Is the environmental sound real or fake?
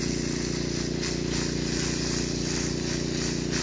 real